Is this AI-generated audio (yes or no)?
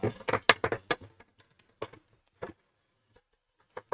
no